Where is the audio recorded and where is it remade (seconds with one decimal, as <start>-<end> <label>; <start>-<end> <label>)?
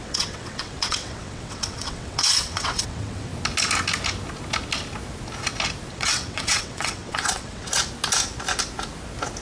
0.0-3.3 remade; 3.3-5.9 recorded; 5.9-7.7 remade; 7.7-9.4 recorded